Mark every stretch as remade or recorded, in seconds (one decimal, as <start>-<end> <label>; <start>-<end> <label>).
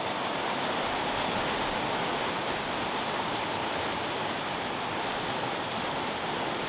0.0-6.7 recorded